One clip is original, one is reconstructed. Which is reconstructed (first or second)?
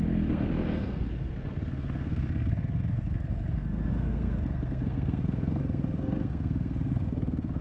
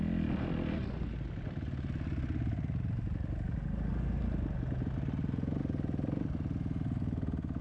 first